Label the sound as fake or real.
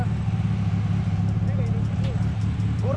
real